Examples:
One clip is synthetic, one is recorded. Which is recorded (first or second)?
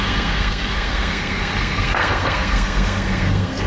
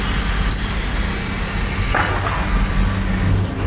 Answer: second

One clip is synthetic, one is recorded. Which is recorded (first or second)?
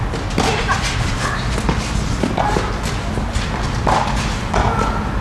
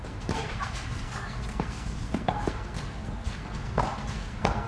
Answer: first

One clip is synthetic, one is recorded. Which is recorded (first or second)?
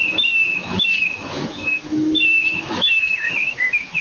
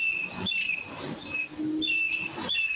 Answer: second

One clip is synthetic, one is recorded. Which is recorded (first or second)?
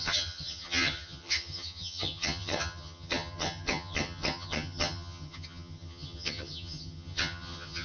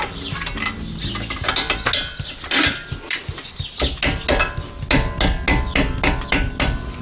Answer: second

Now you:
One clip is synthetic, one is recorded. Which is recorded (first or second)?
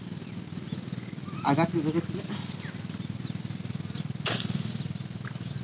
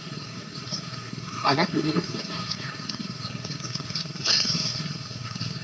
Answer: first